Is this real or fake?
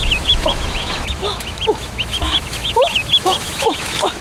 fake